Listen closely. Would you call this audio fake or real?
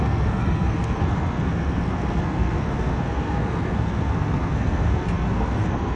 fake